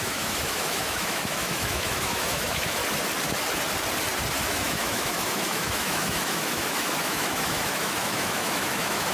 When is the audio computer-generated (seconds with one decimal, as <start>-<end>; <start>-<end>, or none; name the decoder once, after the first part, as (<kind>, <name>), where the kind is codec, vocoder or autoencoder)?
0.0-2.8 (autoencoder, DAC-VAE); 4.5-9.1